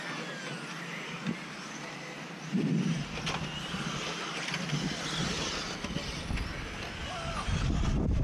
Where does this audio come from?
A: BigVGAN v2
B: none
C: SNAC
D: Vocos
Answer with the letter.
B